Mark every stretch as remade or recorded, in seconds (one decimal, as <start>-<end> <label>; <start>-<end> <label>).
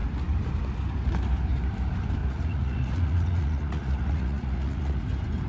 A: 0.0-2.2 recorded; 2.2-5.0 remade; 5.0-5.5 recorded